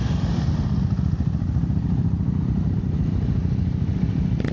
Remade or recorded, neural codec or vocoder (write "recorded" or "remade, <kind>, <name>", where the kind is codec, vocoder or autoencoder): remade, vocoder, BigVGAN v2